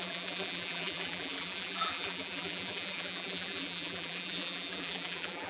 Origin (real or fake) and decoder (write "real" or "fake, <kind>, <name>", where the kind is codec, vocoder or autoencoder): fake, vocoder, BigVGAN v2